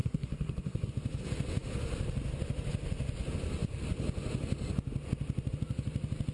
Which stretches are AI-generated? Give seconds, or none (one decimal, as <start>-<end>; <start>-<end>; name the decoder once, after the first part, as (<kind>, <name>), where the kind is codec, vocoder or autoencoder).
0.0-0.9 (codec, SNAC)